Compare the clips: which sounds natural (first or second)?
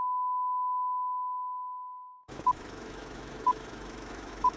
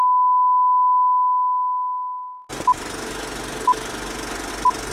second